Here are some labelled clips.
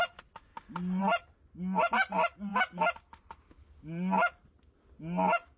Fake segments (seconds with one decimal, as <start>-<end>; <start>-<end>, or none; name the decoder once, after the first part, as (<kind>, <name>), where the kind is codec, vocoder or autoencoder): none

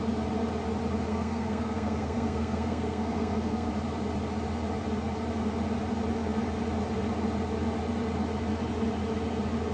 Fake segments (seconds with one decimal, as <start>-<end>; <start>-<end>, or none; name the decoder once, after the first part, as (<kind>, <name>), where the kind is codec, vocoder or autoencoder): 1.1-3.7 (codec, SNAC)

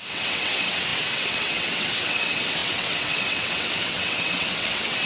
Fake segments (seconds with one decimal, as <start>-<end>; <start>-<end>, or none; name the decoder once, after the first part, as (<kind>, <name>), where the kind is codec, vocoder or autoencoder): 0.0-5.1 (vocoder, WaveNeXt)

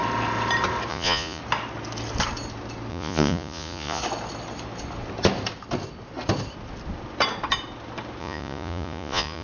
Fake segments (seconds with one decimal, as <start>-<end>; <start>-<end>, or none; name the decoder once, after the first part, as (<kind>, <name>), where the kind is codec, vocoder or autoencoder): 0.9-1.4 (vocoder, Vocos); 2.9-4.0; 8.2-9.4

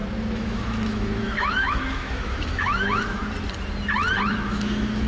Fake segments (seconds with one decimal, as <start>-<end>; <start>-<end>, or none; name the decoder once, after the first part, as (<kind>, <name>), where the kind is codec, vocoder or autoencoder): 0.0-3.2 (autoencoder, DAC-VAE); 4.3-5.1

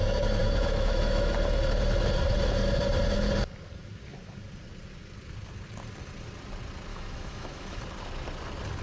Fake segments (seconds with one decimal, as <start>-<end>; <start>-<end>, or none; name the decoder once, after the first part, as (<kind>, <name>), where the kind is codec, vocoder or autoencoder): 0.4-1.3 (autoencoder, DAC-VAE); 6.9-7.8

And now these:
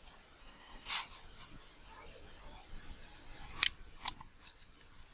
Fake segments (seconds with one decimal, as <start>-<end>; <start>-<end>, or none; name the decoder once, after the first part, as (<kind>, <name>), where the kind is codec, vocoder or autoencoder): 0.4-0.9 (codec, SNAC)